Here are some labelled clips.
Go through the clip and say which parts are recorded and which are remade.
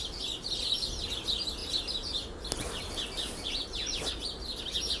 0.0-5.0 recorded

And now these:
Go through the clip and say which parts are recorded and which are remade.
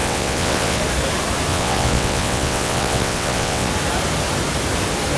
0.0-0.8 remade; 0.8-1.5 recorded; 1.5-3.7 remade; 3.7-5.2 recorded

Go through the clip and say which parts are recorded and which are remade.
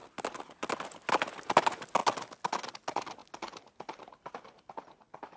0.0-5.4 recorded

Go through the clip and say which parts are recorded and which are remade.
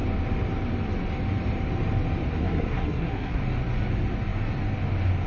0.0-2.4 recorded; 2.4-3.4 remade; 3.4-5.3 recorded